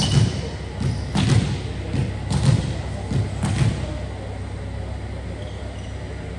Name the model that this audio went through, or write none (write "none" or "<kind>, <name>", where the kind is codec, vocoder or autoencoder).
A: none